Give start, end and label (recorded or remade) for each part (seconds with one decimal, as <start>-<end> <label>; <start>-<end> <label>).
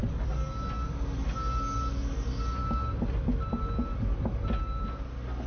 0.0-5.5 recorded